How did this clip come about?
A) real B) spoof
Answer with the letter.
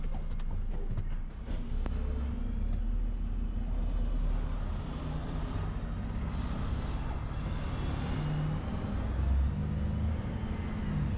A